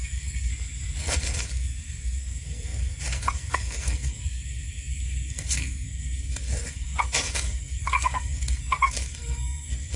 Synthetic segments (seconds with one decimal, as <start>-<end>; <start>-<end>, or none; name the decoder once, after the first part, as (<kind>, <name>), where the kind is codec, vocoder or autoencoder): 0.0-0.5 (codec, SNAC); 1.0-10.0